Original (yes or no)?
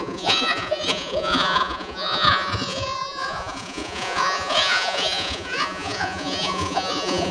no